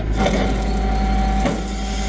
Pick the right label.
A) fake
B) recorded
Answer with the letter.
B